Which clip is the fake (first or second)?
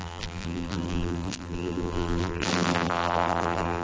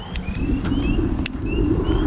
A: first